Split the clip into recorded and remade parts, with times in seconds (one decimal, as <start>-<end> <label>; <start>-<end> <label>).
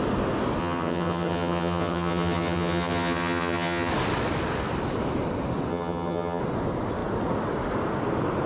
0.0-0.6 recorded; 0.6-3.9 remade; 3.9-5.7 recorded; 5.7-6.4 remade; 6.4-8.5 recorded